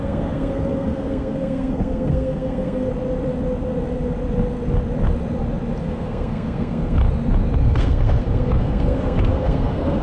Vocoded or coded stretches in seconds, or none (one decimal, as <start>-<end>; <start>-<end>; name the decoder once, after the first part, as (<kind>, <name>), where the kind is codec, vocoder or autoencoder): 0.0-2.9 (codec, SNAC); 5.8-7.0; 7.6-10.0